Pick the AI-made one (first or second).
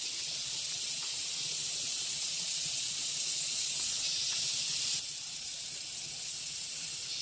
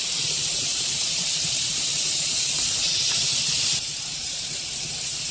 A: second